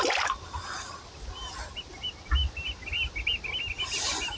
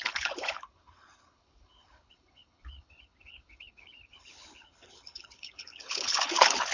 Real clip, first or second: first